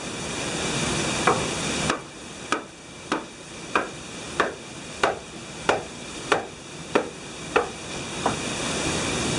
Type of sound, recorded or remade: remade